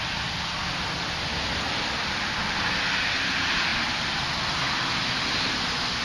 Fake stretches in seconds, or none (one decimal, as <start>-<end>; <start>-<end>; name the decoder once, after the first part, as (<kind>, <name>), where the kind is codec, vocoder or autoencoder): none